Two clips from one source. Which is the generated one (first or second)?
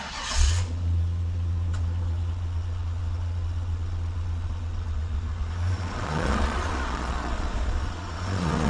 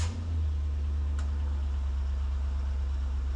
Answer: first